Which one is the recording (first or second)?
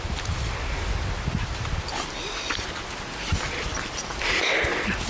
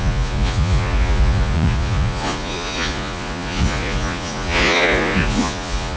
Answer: first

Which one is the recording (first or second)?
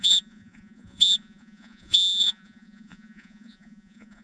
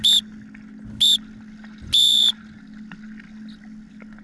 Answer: second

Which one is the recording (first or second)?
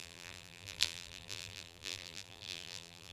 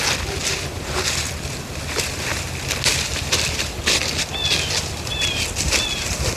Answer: second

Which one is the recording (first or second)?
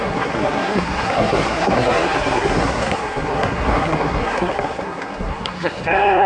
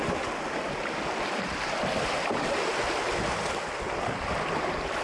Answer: second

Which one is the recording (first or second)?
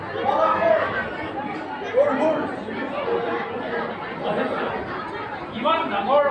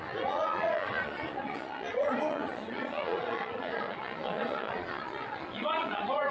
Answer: first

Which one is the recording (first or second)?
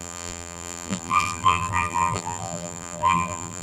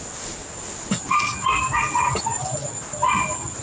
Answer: second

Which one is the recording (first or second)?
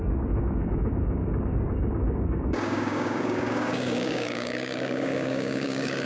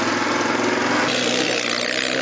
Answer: second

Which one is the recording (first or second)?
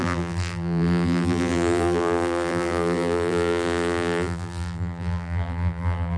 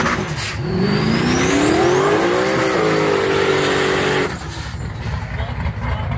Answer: second